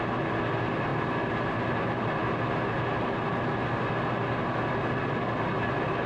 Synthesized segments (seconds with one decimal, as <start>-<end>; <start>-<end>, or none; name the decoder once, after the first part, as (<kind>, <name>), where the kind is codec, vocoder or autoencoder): none

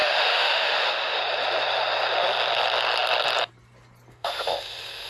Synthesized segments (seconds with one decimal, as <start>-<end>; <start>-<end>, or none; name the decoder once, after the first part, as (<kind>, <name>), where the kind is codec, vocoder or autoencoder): 0.0-1.2 (autoencoder, DAC-VAE); 4.1-5.1

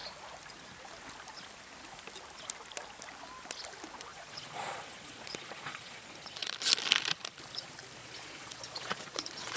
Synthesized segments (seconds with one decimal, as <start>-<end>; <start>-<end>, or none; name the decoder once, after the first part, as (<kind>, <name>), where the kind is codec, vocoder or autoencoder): 4.1-6.5 (vocoder, Vocos); 8.0-9.6

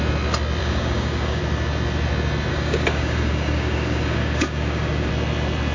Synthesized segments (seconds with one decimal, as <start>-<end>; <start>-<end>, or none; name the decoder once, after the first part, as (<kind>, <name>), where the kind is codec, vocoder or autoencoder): 0.6-1.4 (codec, DAC); 2.5-5.1

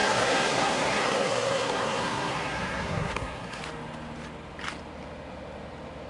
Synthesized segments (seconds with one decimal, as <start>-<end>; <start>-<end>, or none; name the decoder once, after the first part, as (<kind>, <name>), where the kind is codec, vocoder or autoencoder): 0.0-3.6 (codec, SNAC)

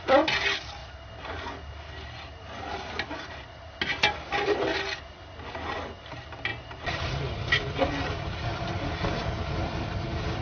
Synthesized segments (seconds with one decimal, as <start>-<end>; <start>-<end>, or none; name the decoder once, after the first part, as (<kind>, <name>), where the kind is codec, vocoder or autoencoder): none